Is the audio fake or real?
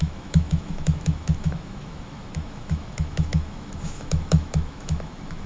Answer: fake